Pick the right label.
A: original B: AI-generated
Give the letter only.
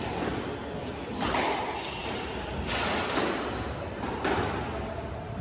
A